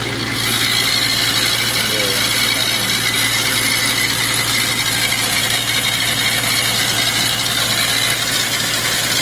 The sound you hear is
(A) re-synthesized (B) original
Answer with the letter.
B